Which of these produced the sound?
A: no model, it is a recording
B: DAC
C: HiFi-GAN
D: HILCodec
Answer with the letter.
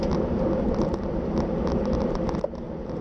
A